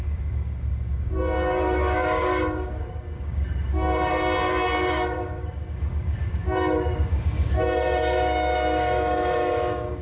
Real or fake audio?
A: fake